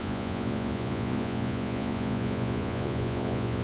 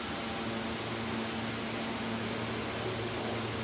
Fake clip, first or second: first